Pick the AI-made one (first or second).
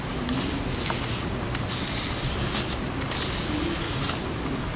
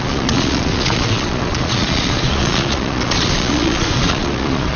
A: second